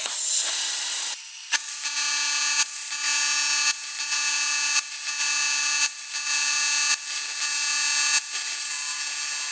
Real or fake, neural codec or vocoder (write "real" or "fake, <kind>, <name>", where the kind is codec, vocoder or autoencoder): real